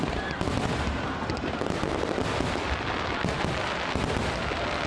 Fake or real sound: real